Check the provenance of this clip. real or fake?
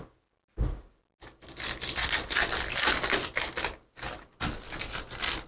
real